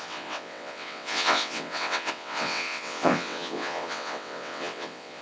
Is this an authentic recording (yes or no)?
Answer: no